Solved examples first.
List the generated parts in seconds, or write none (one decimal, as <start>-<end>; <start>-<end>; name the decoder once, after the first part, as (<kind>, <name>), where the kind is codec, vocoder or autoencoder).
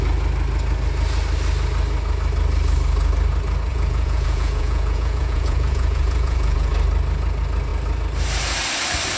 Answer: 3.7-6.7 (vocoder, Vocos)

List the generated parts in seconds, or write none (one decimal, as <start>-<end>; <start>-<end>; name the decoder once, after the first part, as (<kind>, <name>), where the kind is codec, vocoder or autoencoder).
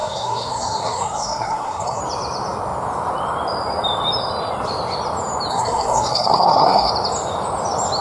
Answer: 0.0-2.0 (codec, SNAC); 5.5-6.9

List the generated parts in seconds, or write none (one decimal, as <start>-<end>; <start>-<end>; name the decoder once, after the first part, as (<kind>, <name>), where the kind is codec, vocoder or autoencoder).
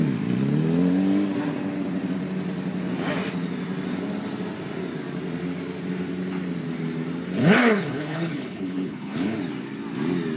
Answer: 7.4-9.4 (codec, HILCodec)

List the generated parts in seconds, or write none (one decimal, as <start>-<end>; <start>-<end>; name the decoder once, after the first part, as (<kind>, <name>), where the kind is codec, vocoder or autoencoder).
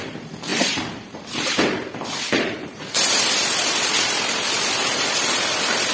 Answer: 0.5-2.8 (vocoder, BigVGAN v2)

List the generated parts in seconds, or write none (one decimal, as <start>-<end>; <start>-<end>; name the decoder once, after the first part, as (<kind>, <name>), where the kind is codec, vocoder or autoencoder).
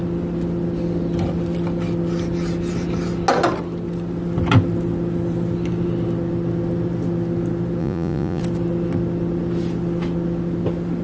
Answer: 7.8-8.4 (vocoder, Vocos)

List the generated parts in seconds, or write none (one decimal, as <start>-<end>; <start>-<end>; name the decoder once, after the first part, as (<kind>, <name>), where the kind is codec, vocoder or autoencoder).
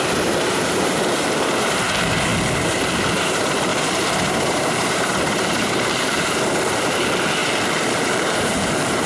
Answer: 0.0-2.3 (vocoder, BigVGAN v2); 3.1-3.7; 4.3-9.1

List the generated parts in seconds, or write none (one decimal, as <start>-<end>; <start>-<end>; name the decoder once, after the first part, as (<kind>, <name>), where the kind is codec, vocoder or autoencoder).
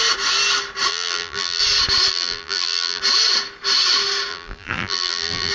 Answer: 0.9-1.6 (vocoder, BigVGAN v2); 2.1-3.0; 4.3-5.5